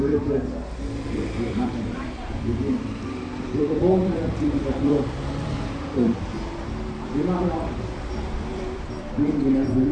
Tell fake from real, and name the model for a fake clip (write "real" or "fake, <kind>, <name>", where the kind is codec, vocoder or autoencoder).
fake, vocoder, BigVGAN v2